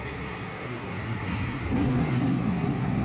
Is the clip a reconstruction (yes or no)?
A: yes